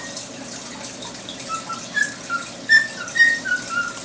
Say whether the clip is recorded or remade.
recorded